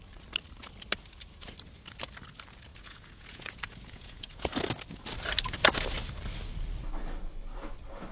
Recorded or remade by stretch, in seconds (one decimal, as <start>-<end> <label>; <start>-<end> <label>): 0.0-2.7 recorded; 2.7-4.5 remade; 4.5-8.1 recorded